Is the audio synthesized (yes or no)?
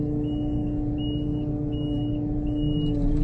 no